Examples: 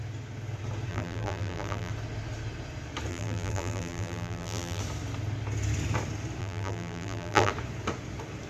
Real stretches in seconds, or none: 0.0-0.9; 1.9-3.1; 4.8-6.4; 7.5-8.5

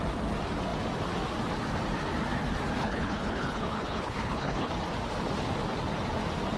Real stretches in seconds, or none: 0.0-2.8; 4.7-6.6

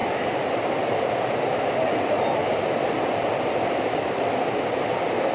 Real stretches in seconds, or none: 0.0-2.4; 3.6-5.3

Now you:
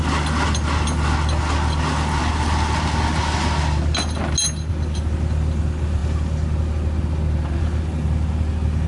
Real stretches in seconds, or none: 0.0-8.9

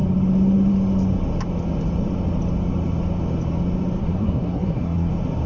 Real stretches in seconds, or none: 0.0-4.0; 5.1-5.5

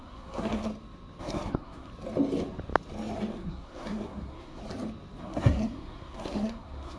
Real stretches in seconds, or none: 0.7-1.2; 1.9-3.3; 4.6-5.2

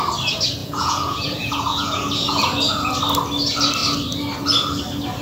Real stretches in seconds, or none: 0.0-0.6; 2.9-5.2

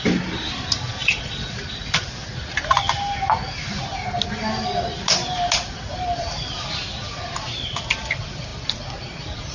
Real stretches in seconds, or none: 0.0-1.0; 1.6-9.5